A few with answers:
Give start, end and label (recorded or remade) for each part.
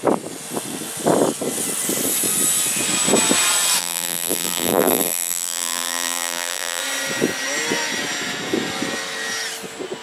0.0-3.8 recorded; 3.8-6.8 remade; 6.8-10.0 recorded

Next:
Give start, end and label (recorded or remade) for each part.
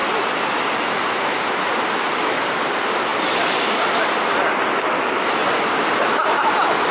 0.0-5.4 recorded; 5.4-6.4 remade; 6.4-6.9 recorded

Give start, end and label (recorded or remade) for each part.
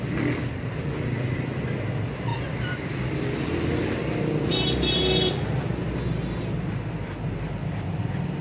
0.0-8.4 recorded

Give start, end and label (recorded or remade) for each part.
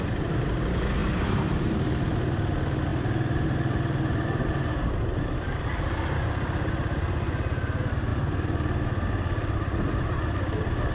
0.0-1.0 recorded; 1.0-2.5 remade; 2.5-2.9 recorded; 2.9-5.6 remade; 5.6-10.9 recorded